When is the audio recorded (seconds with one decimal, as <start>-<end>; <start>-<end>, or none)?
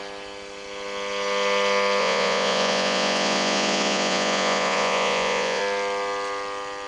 0.0-2.0; 5.6-6.9